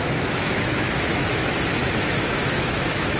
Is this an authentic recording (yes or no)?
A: no